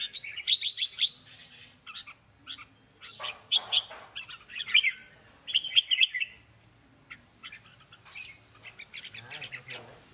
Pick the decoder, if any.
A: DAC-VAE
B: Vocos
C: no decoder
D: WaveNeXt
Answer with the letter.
C